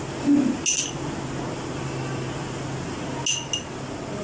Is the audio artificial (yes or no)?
no